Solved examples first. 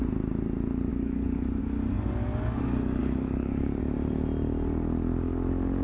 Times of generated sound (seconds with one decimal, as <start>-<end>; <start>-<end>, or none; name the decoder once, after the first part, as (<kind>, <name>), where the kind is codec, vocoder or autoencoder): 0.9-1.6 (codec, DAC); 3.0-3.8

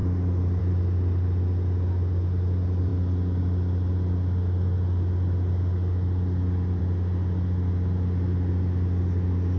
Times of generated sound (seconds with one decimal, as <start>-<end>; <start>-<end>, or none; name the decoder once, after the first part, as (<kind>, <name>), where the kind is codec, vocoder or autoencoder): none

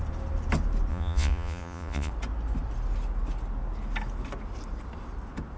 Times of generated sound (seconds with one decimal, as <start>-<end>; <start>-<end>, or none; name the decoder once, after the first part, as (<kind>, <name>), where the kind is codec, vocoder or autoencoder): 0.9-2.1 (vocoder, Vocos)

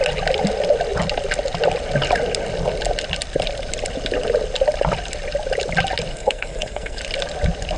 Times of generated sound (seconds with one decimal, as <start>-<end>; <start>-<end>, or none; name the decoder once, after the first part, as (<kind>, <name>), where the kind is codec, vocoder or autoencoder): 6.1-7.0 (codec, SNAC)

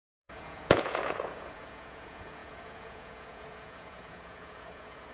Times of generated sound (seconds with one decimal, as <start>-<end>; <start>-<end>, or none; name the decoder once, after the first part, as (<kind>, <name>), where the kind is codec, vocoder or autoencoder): 0.0-5.1 (vocoder, Vocos)